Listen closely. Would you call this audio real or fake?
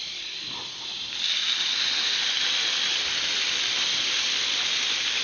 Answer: fake